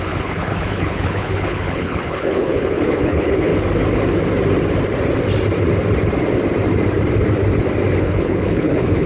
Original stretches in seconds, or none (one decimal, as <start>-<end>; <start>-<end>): 3.5-8.0